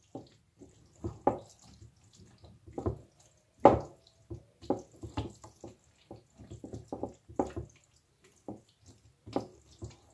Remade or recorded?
recorded